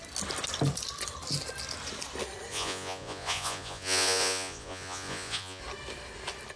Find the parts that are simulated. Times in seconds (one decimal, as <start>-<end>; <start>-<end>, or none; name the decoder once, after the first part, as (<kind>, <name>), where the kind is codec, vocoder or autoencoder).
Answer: 2.5-5.6 (vocoder, Vocos)